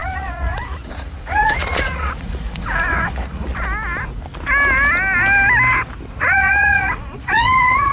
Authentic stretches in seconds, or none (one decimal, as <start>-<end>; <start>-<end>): 3.5-6.2